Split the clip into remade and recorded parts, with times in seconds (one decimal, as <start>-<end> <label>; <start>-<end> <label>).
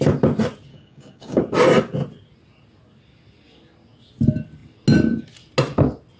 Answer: 0.0-0.7 recorded; 0.7-1.4 remade; 1.4-6.2 recorded